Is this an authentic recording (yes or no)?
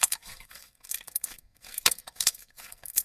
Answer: no